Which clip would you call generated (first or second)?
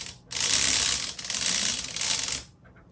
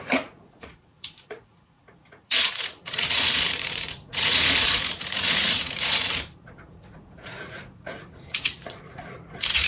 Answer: second